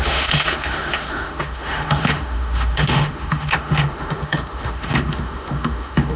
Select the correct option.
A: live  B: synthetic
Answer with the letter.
B